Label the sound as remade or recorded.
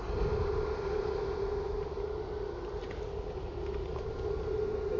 recorded